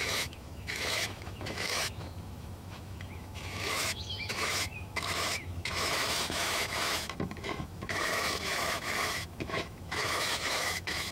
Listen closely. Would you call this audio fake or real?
fake